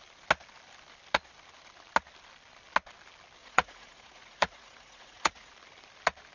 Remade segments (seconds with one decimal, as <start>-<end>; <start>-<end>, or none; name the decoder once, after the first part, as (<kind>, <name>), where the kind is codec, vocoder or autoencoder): 3.4-5.5 (vocoder, Vocos)